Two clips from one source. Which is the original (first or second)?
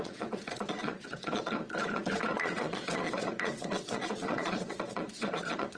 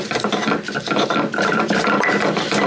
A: second